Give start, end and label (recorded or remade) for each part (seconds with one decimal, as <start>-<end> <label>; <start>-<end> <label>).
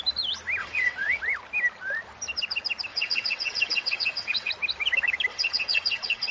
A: 0.0-0.6 recorded; 0.6-1.2 remade; 1.2-2.9 recorded; 2.9-4.5 remade; 4.5-5.3 recorded; 5.3-6.3 remade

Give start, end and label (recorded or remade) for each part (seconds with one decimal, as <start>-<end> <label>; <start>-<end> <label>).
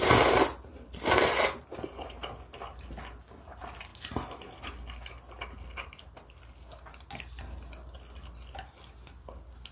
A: 0.0-9.7 recorded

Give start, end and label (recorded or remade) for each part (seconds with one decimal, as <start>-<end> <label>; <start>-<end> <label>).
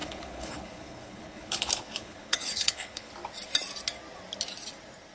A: 0.0-3.1 remade; 3.1-5.1 recorded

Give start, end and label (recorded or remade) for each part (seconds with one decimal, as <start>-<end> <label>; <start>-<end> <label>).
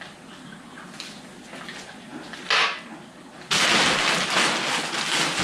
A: 0.0-5.4 recorded